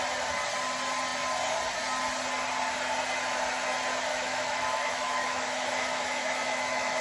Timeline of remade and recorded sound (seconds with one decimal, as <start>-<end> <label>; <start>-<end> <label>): 0.0-4.1 recorded; 4.1-7.0 remade